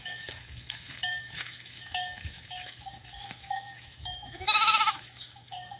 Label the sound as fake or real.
fake